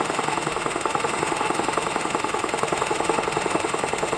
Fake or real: fake